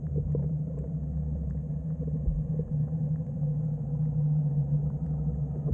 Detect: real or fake fake